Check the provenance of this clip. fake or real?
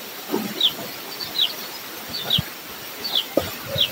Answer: real